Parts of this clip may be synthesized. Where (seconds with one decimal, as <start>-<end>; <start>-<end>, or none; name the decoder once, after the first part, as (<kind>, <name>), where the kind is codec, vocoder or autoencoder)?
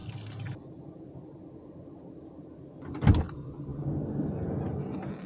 none